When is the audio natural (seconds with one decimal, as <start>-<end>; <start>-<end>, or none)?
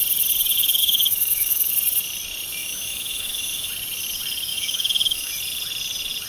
0.0-0.8; 1.7-2.6; 3.7-4.5; 5.3-6.3